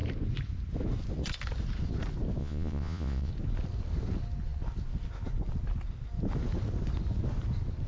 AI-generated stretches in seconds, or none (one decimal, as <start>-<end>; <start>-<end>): 2.4-3.3